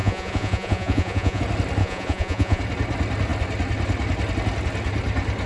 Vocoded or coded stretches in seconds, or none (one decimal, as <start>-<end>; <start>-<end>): 0.0-1.4; 1.8-2.6

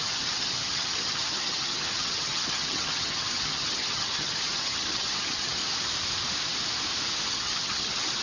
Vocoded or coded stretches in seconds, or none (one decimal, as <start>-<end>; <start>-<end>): 0.0-5.6; 7.3-8.2

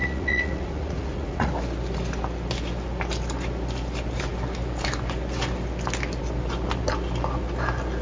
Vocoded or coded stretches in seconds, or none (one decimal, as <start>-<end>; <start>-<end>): 0.0-1.5

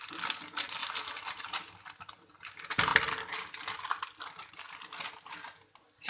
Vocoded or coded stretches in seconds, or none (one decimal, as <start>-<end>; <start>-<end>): none

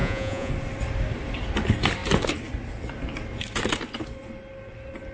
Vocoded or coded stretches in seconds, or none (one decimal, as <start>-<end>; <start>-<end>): 0.0-0.5

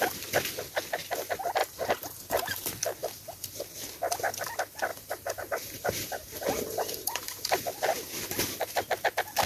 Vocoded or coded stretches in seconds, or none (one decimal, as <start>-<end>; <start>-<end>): 1.6-2.4; 3.0-3.6; 4.9-7.6

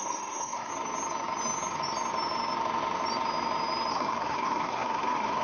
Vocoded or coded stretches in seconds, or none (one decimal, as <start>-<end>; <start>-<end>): 0.0-0.7; 3.9-5.4

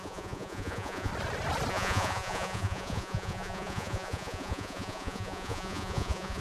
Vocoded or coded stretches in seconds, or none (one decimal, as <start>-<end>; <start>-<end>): 0.0-1.1; 1.7-6.4